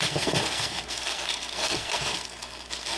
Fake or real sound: fake